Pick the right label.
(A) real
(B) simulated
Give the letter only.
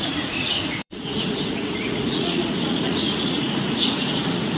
B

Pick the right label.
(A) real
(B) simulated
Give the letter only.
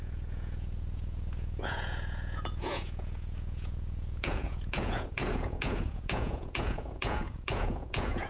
B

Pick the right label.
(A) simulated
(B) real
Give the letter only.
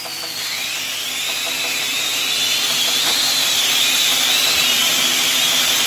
B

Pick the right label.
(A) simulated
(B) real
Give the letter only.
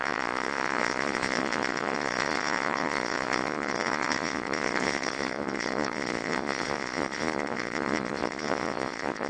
A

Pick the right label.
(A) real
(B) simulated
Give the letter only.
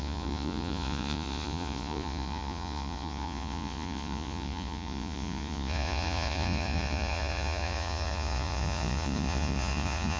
B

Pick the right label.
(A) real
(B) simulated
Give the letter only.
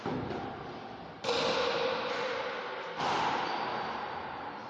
A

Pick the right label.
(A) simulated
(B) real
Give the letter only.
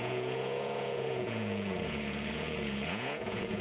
A